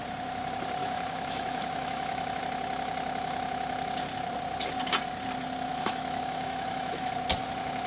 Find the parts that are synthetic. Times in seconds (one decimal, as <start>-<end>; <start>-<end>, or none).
0.8-2.4; 5.7-7.1